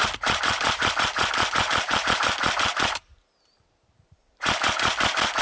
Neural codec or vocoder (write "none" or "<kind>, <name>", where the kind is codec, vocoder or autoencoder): none